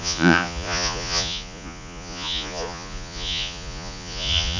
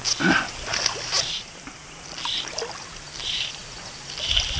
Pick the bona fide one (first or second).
second